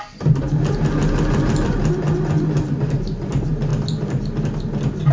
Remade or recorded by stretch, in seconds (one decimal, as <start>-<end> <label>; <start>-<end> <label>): 0.0-5.1 recorded